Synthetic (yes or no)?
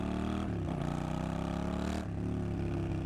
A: no